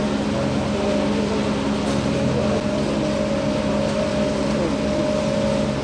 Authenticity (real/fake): real